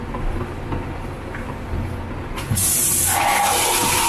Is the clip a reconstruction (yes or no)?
no